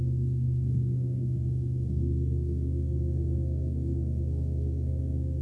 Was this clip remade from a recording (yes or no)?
yes